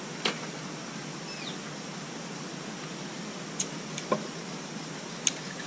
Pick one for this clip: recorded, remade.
recorded